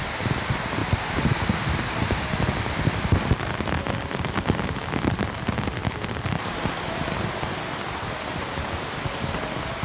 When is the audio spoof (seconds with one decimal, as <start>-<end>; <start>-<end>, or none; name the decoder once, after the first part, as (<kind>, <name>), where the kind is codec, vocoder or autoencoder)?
0.8-2.0 (vocoder, BigVGAN v2)